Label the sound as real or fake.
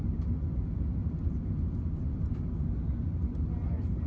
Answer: real